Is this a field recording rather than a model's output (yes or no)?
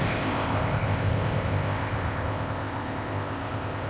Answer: no